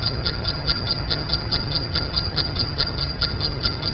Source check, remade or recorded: remade